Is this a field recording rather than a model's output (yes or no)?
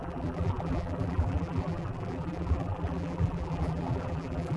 no